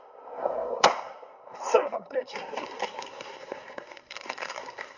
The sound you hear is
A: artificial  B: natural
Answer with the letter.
A